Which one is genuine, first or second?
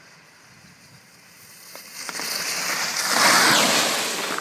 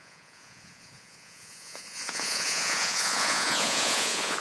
first